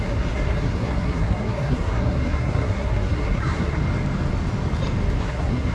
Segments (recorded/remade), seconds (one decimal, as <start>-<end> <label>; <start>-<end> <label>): 0.0-3.8 remade; 3.8-5.2 recorded; 5.2-5.7 remade